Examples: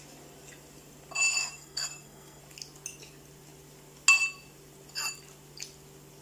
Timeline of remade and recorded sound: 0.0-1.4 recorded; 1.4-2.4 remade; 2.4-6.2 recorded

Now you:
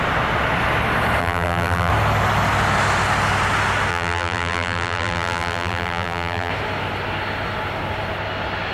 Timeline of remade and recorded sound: 0.0-1.2 recorded; 1.2-1.9 remade; 1.9-3.9 recorded; 3.9-6.5 remade; 6.5-8.7 recorded

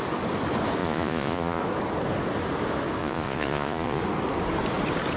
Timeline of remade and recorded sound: 0.0-0.8 recorded; 0.8-1.6 remade; 1.6-3.0 recorded; 3.0-4.0 remade; 4.0-5.2 recorded

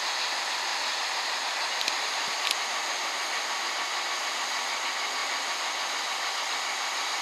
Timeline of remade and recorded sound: 0.0-0.7 recorded; 0.7-2.3 remade; 2.3-7.2 recorded

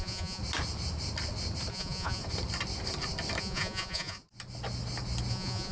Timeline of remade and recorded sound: 0.0-0.4 remade; 0.4-1.7 recorded; 1.7-2.2 remade; 2.2-3.4 recorded; 3.4-4.2 remade; 4.2-5.3 recorded; 5.3-5.7 remade

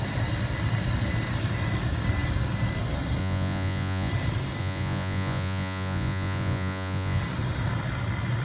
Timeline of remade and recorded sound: 0.0-3.2 recorded; 3.2-4.1 remade; 4.1-4.6 recorded; 4.6-7.2 remade; 7.2-8.4 recorded

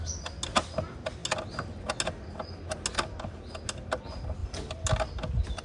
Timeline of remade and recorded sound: 0.0-5.6 recorded